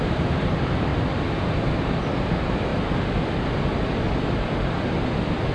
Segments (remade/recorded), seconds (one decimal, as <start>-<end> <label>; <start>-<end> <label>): 0.0-0.9 remade; 0.9-2.3 recorded; 2.3-2.7 remade; 2.7-4.1 recorded; 4.1-5.5 remade